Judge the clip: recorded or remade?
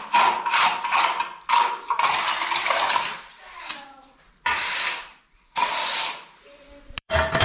remade